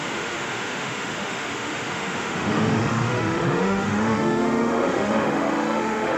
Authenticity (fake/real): fake